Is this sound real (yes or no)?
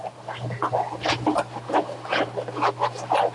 yes